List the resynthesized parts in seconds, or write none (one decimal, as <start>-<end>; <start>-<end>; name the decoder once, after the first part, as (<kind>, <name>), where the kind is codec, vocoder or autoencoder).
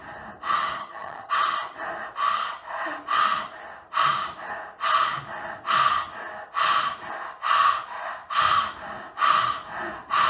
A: 0.8-1.3 (vocoder, HiFi-GAN)